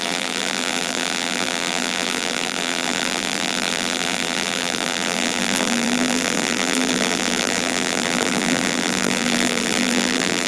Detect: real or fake fake